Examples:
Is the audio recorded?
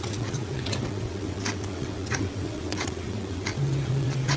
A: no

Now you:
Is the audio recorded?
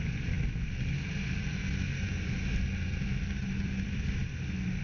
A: yes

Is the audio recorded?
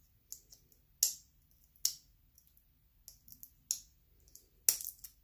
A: yes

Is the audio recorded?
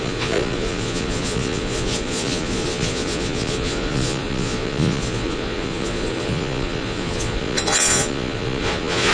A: no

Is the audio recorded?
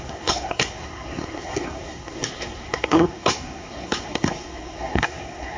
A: no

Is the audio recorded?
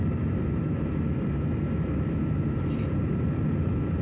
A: no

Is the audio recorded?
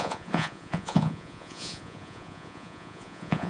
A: no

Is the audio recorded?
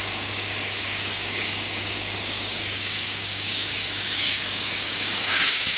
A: no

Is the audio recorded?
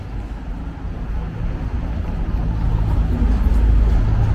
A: yes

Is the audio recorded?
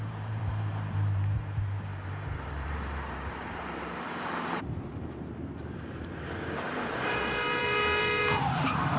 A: no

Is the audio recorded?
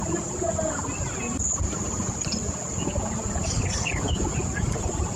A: yes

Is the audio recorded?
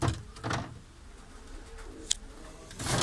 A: yes